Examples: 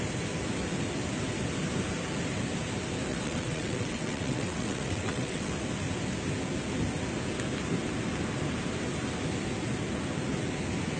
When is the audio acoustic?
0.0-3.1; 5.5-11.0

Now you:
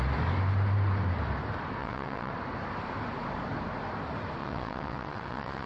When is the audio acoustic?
0.0-1.8; 2.3-4.4

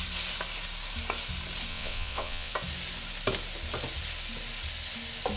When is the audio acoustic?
0.0-1.7; 2.5-5.4

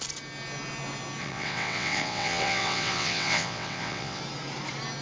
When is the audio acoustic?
0.0-1.2; 4.2-5.0

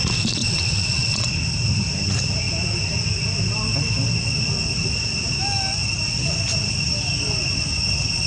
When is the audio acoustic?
0.0-0.4; 1.3-8.3